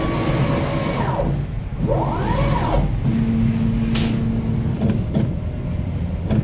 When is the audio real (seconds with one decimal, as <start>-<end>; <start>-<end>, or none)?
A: 0.0-6.4